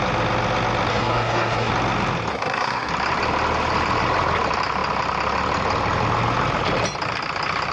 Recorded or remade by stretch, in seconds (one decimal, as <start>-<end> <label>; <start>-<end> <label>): 0.0-0.9 recorded; 0.9-1.7 remade; 1.7-2.3 recorded; 2.3-2.9 remade; 2.9-7.7 recorded